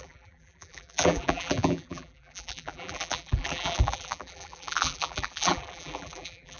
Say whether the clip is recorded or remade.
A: remade